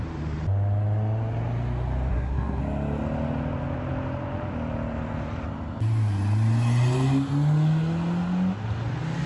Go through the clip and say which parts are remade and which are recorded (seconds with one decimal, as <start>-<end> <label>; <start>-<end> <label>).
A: 0.0-2.1 recorded; 2.1-2.6 remade; 2.6-9.3 recorded